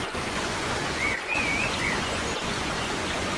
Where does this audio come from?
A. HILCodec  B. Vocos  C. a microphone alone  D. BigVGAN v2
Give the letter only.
B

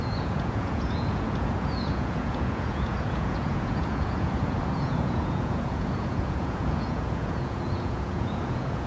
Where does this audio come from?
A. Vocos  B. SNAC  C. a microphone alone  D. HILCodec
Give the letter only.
A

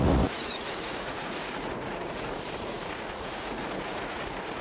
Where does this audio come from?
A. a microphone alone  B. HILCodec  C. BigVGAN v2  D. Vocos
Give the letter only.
D